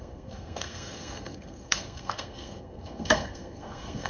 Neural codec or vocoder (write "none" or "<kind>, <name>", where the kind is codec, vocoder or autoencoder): codec, SNAC